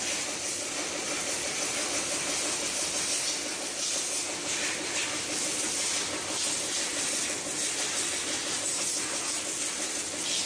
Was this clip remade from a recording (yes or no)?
no